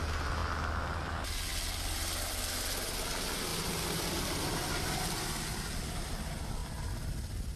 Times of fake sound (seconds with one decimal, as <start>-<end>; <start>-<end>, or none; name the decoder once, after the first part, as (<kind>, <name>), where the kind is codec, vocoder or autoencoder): none